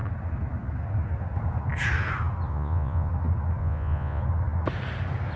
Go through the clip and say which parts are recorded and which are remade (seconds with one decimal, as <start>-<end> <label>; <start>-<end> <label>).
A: 0.0-2.5 recorded; 2.5-3.1 remade; 3.1-3.6 recorded; 3.6-4.2 remade; 4.2-5.4 recorded